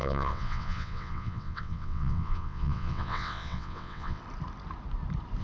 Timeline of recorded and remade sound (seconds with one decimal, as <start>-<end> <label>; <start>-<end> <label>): 0.0-4.2 remade; 4.2-5.4 recorded